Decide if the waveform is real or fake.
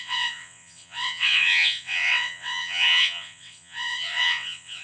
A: fake